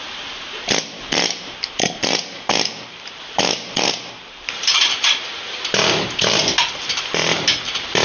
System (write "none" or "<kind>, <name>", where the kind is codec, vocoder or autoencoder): vocoder, BigVGAN v2